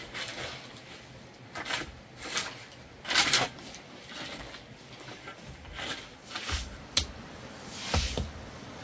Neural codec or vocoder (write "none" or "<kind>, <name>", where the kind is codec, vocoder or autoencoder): none